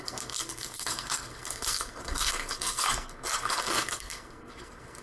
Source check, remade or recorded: remade